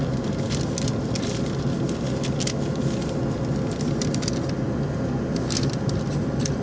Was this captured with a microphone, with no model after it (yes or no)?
yes